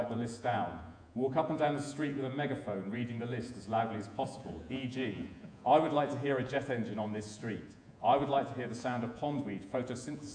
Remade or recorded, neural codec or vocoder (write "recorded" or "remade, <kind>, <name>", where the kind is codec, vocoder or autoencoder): remade, vocoder, Vocos